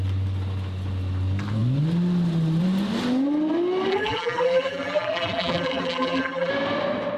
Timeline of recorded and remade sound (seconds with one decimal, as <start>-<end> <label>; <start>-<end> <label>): 0.0-3.9 recorded; 3.9-6.5 remade; 6.5-7.2 recorded